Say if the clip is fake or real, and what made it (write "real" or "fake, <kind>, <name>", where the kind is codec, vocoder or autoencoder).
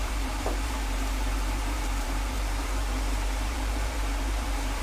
fake, vocoder, BigVGAN v2